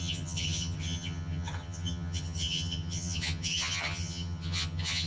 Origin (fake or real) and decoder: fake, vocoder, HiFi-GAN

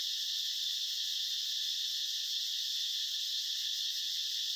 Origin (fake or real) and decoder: real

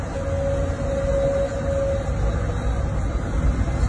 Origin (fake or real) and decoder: real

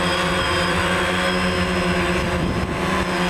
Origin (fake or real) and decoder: real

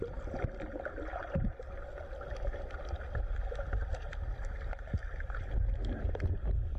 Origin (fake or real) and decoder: real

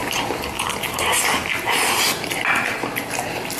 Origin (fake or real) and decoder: real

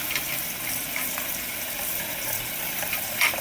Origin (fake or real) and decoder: fake, vocoder, BigVGAN v2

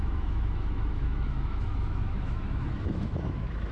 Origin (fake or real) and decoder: fake, autoencoder, DAC-VAE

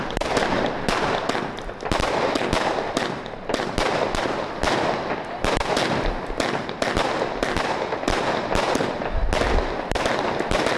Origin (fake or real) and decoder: real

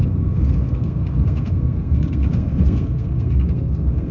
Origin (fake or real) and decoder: fake, codec, SNAC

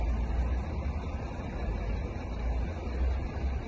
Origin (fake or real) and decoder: real